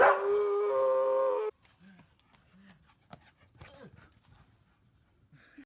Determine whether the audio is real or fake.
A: real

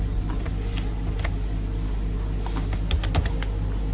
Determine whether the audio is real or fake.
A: real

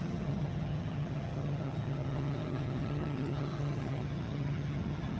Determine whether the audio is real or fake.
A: fake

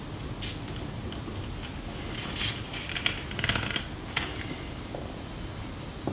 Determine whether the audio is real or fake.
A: real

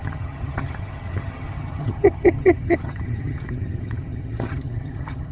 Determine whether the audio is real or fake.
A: fake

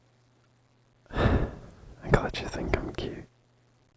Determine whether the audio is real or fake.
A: real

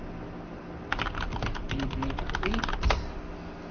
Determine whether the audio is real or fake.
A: real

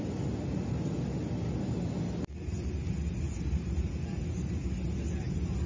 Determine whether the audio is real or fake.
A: real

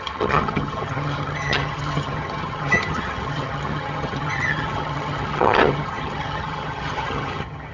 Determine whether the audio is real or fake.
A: fake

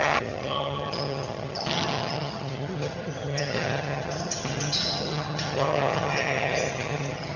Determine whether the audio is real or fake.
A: fake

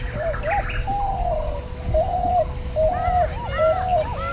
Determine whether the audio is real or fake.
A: real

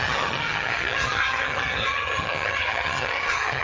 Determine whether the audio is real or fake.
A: fake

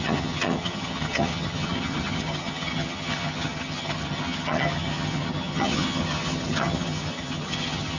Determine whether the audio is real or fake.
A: fake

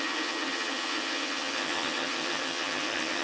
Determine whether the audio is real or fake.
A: fake